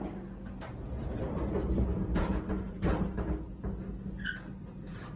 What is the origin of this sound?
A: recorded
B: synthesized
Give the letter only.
A